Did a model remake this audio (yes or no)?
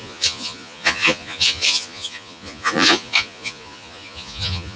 yes